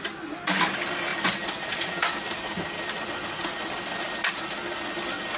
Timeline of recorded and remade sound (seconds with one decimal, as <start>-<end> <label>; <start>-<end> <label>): 0.0-1.1 recorded; 1.1-4.3 remade; 4.3-5.4 recorded